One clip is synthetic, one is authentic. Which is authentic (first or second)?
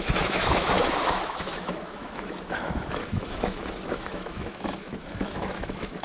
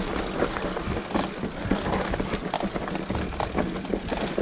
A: second